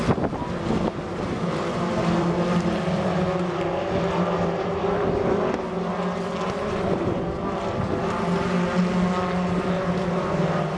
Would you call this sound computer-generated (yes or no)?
no